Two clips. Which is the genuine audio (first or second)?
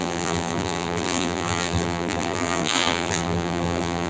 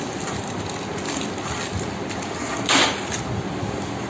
second